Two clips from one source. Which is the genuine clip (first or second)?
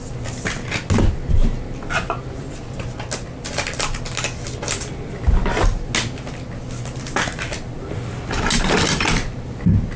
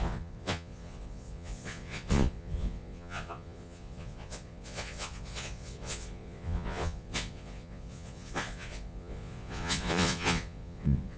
first